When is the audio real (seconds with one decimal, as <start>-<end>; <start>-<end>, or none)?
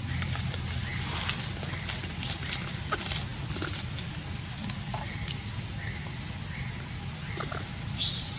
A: 0.0-8.4